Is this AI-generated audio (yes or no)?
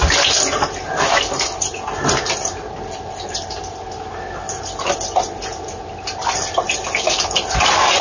no